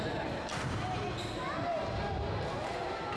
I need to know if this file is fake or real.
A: real